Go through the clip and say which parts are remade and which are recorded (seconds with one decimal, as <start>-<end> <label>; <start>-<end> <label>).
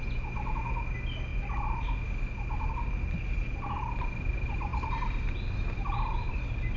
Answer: 0.0-6.8 recorded